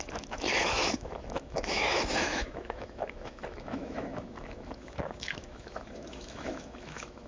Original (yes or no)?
no